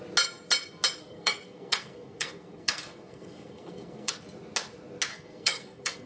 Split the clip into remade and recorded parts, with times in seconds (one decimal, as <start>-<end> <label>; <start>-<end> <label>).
0.0-1.0 recorded; 1.0-4.1 remade; 4.1-5.1 recorded; 5.1-6.1 remade